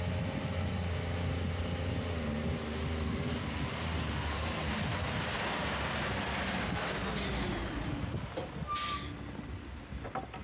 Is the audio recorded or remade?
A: recorded